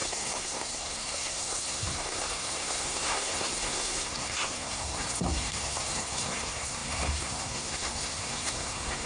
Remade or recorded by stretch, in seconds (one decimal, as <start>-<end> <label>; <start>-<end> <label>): 0.0-9.1 remade